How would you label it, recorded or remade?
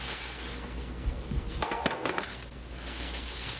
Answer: remade